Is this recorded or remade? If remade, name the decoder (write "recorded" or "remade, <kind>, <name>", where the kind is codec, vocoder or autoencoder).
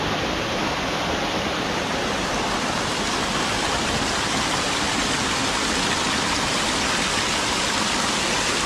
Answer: recorded